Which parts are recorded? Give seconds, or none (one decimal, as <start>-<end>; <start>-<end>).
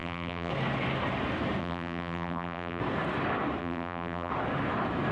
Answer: 0.5-1.6; 2.8-3.6; 4.3-5.1